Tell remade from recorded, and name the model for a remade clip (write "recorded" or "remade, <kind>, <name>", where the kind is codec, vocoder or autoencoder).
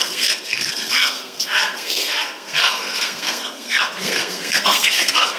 remade, codec, SNAC